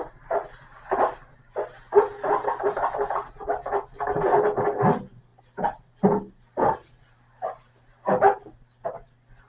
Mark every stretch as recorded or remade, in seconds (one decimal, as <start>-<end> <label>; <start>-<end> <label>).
0.0-9.5 recorded